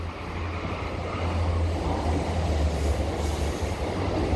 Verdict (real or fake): real